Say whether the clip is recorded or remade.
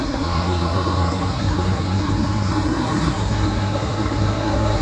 remade